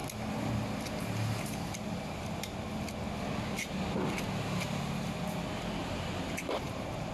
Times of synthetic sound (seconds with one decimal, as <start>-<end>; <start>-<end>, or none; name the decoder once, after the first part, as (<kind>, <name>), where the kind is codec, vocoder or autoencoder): 5.8-7.1 (vocoder, BigVGAN v2)